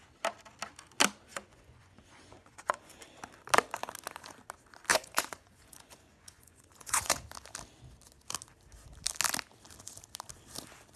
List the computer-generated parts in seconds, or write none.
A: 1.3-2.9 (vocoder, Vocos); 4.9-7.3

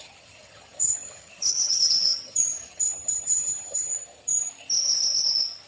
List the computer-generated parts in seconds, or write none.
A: 0.0-3.9 (vocoder, HiFi-GAN)

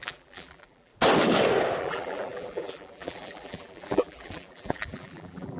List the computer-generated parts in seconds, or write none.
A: 0.0-0.9 (vocoder, BigVGAN v2); 1.8-5.6

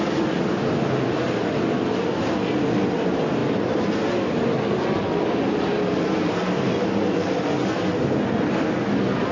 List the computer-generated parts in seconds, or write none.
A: none

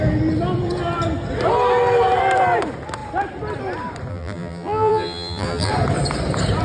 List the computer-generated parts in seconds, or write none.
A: 4.1-5.7 (vocoder, BigVGAN v2)

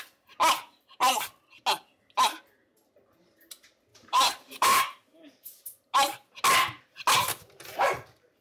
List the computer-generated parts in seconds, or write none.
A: 3.9-5.6 (codec, DAC)